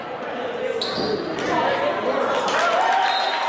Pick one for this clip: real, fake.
real